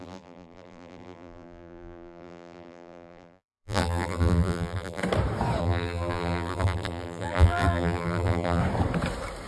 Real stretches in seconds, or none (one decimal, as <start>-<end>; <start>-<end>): 5.0-5.6; 8.6-9.5